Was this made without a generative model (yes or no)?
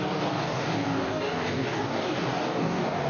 no